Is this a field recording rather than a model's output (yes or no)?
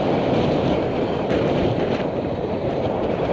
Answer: no